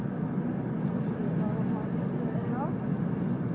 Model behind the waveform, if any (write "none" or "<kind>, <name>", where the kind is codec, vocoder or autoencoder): none